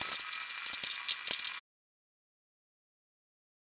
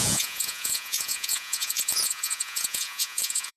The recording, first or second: first